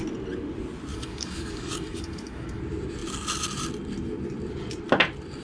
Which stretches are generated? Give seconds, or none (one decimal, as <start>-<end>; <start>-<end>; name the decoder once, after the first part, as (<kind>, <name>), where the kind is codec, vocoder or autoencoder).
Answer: 0.9-2.6 (codec, DAC)